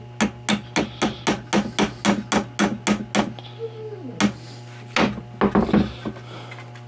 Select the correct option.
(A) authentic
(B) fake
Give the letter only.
A